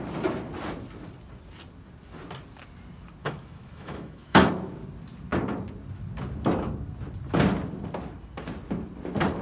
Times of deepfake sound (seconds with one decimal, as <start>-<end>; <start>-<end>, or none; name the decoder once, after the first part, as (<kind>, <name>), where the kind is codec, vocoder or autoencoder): 3.2-4.5 (autoencoder, DAC-VAE)